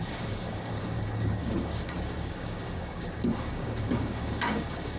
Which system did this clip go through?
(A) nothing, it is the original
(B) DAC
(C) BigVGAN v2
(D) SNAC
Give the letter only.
B